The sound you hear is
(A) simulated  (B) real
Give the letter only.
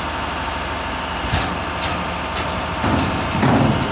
B